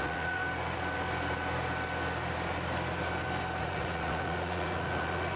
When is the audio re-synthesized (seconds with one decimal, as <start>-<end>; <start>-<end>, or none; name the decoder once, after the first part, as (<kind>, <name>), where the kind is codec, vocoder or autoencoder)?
0.0-0.4 (vocoder, Vocos); 3.6-5.4